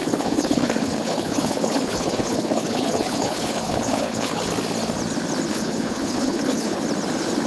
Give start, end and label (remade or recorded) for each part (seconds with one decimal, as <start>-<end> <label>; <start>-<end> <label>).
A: 0.0-4.5 remade; 4.5-5.5 recorded; 5.5-6.8 remade; 6.8-7.5 recorded